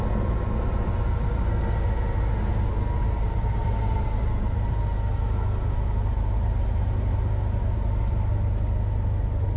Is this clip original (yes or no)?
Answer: yes